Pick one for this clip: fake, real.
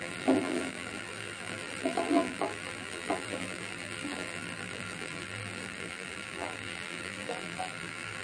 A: fake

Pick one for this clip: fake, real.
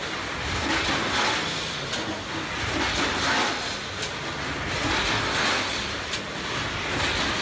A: real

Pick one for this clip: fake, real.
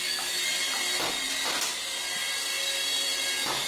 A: real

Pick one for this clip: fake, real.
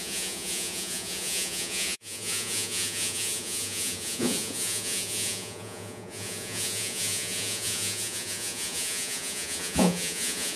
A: fake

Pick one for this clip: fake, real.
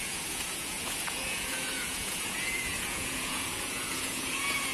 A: fake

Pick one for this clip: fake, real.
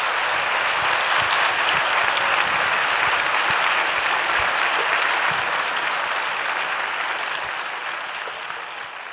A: real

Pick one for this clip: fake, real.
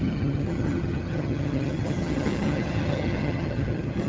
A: fake